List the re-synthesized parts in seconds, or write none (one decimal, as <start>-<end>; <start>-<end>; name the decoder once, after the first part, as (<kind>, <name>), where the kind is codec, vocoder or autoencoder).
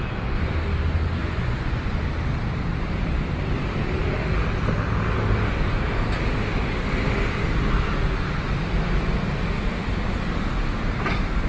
1.2-2.0 (vocoder, Vocos)